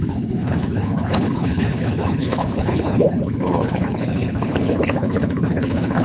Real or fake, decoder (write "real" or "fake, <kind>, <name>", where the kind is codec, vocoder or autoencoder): fake, codec, HILCodec